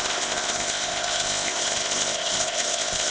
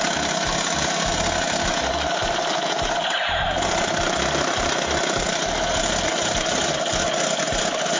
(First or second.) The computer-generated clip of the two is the first